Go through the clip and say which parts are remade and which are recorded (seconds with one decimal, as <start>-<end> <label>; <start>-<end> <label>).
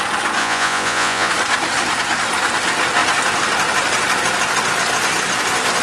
0.0-0.4 recorded; 0.4-1.3 remade; 1.3-5.8 recorded